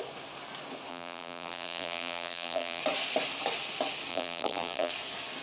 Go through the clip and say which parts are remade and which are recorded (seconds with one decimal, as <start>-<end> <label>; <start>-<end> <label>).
0.0-0.9 recorded; 0.9-2.8 remade; 2.8-4.1 recorded; 4.1-4.9 remade; 4.9-5.4 recorded

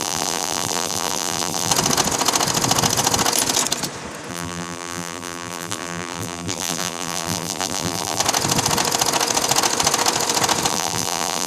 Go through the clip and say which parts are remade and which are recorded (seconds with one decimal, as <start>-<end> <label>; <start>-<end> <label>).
0.0-1.7 remade; 1.7-4.3 recorded; 4.3-8.2 remade; 8.2-10.7 recorded; 10.7-11.5 remade

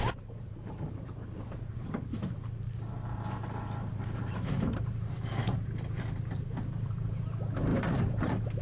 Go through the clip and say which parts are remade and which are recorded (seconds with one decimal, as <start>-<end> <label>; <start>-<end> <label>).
0.0-8.6 remade